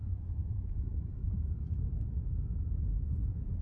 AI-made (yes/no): yes